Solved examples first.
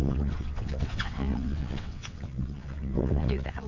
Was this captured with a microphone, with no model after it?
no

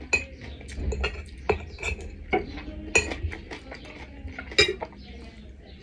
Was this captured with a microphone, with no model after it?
yes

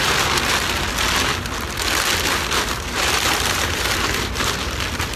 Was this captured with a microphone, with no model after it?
yes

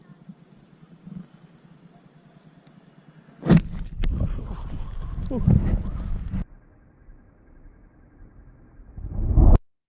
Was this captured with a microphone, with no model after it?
yes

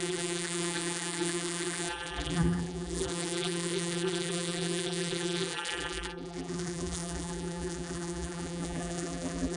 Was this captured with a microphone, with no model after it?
no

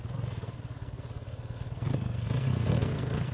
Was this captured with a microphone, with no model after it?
no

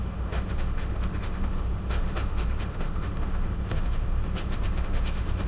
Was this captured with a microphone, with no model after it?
no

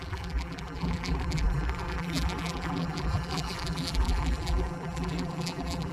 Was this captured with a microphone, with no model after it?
no